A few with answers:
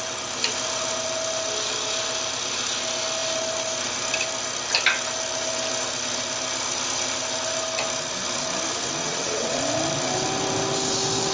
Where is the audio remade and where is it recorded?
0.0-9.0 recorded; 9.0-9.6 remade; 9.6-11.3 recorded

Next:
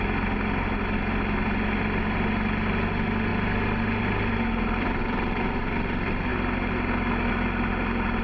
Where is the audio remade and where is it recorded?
0.0-8.2 recorded

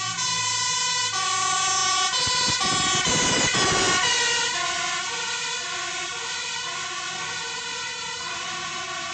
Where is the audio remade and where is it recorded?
0.0-9.1 recorded

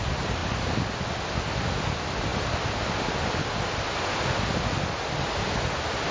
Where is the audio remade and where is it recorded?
0.0-6.1 recorded